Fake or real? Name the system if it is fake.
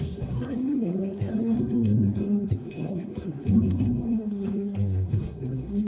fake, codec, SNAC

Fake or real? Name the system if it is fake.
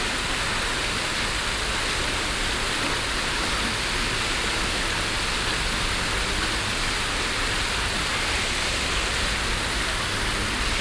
real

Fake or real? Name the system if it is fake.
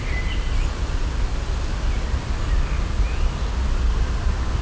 real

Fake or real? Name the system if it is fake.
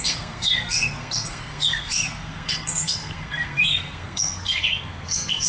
fake, codec, SNAC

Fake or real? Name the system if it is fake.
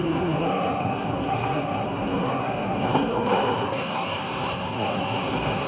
fake, codec, SNAC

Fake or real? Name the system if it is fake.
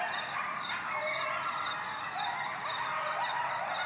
real